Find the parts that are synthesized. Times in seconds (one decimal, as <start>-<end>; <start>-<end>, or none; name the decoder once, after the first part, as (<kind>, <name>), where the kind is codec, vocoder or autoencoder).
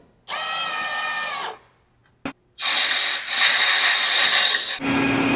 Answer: none